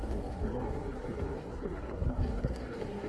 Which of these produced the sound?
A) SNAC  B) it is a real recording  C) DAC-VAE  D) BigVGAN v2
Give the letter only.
A